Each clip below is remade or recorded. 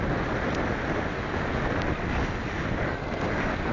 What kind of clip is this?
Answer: recorded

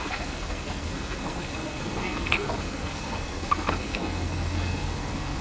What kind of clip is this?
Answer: remade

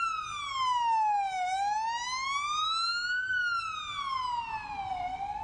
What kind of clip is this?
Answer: recorded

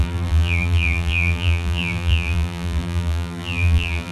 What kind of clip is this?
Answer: remade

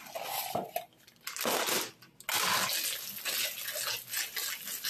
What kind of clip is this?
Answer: recorded